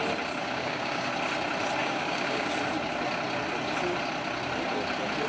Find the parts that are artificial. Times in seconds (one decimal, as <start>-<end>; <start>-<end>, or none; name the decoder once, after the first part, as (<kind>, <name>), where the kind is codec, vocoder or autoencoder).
0.4-1.1 (codec, DAC); 1.8-2.5